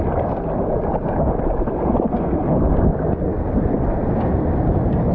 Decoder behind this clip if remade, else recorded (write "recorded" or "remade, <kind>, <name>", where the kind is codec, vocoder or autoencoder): recorded